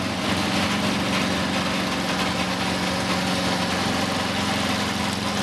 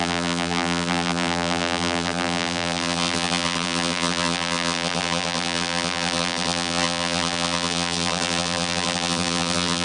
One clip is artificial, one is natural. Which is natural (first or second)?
first